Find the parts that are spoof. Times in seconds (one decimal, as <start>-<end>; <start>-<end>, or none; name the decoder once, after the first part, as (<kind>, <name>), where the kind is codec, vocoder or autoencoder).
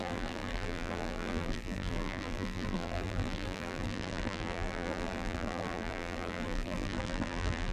0.0-7.7 (vocoder, BigVGAN v2)